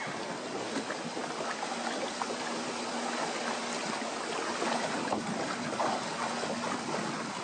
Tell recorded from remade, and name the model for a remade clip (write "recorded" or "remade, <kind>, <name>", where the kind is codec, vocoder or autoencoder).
recorded